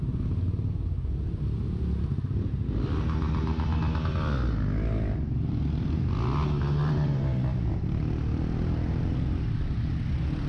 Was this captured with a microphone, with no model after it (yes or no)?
yes